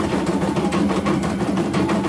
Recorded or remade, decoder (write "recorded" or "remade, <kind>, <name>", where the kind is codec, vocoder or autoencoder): remade, vocoder, BigVGAN v2